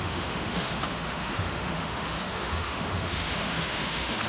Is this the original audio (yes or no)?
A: no